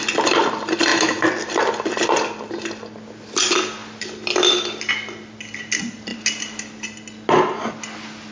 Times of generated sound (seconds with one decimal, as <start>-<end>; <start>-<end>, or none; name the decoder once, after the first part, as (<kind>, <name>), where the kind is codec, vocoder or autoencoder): none